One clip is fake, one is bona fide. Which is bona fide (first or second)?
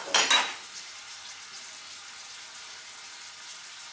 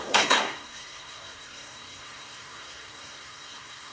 first